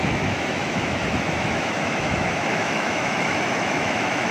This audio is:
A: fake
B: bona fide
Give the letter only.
A